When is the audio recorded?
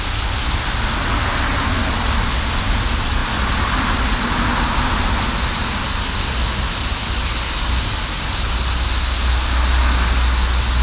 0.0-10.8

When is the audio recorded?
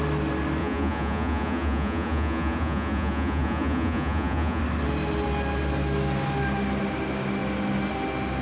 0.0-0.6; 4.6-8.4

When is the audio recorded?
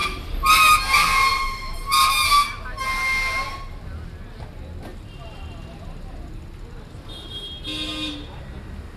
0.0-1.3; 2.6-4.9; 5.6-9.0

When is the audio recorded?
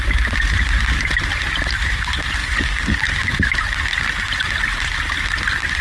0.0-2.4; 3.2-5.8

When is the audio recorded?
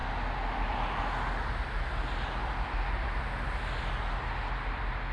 0.0-5.1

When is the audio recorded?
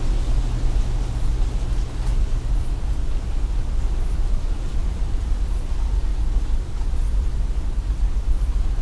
0.0-2.1; 2.8-4.8; 5.4-6.1; 7.6-8.8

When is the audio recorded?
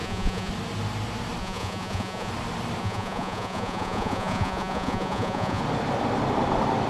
0.5-1.4; 2.3-2.8; 5.6-6.9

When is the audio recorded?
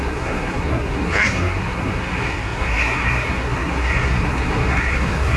none